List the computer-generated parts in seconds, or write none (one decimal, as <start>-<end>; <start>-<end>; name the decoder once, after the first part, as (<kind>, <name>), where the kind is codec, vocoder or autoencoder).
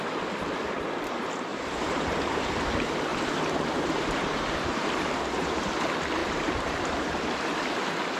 1.5-2.7 (vocoder, BigVGAN v2); 3.1-5.7; 6.2-7.3